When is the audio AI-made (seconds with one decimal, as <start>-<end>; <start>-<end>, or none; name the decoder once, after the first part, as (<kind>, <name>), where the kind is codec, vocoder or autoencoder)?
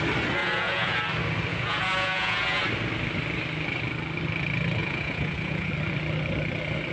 0.4-1.0 (vocoder, Vocos); 1.5-2.6; 4.8-5.7